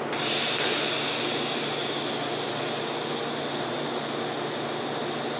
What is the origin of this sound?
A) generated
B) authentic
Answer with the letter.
B